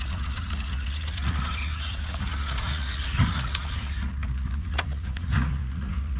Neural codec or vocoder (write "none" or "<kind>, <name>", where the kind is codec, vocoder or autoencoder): vocoder, Vocos